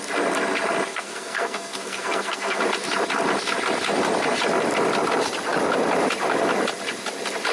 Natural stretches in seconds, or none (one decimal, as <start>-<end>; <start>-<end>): 0.0-0.9; 2.6-7.5